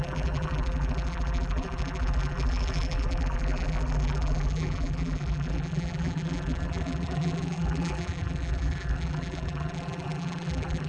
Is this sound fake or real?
fake